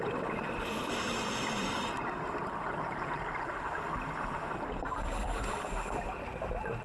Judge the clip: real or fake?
real